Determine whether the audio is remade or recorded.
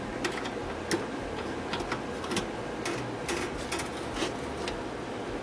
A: recorded